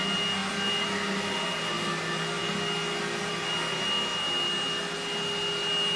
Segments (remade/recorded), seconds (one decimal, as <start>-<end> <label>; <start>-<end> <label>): 0.0-6.0 recorded